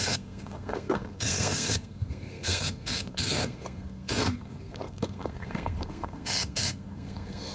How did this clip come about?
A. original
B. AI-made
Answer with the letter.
B